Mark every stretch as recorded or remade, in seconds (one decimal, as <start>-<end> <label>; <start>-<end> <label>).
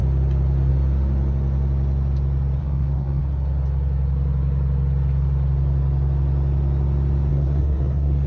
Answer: 0.0-2.6 recorded; 2.6-3.2 remade; 3.2-7.3 recorded; 7.3-8.3 remade